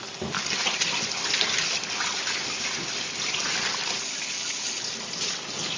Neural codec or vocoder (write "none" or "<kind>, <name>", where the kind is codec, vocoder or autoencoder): none